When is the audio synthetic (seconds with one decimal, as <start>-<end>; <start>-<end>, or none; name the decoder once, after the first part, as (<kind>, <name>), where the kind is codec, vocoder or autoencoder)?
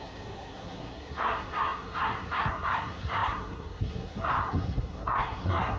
0.0-5.8 (codec, SNAC)